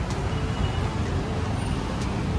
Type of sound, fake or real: real